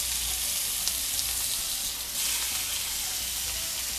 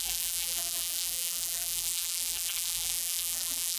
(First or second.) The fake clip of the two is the second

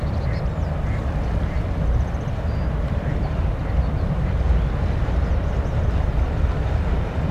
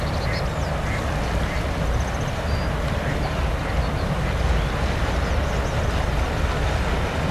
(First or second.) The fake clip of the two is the first